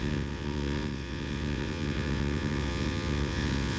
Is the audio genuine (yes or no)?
no